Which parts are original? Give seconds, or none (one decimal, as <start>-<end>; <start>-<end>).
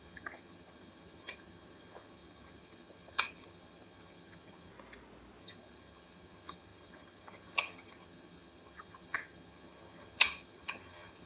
4.7-5.4